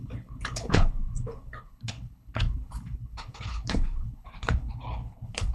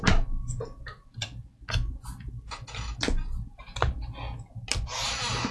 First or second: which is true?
second